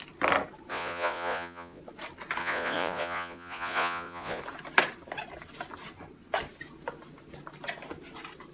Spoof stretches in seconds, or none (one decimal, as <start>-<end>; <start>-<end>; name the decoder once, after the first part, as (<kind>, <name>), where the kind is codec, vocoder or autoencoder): 0.7-1.8 (vocoder, Vocos); 2.4-4.4